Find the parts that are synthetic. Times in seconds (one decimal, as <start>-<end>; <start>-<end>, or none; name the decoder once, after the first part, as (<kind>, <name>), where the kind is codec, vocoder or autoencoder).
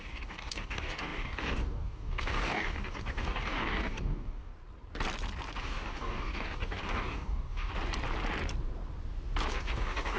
0.0-4.5 (codec, DAC); 5.6-7.7; 9.5-10.2